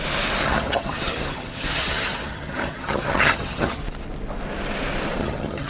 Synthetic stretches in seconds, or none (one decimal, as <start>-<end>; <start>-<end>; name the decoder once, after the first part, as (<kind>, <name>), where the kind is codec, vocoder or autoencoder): 0.4-3.8 (vocoder, HiFi-GAN); 5.2-5.7